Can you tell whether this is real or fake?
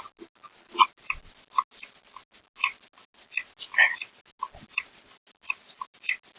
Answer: real